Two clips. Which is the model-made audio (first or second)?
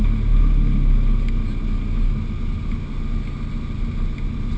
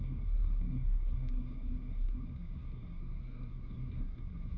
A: second